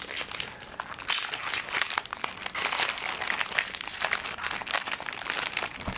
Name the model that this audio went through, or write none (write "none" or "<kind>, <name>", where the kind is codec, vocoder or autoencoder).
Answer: none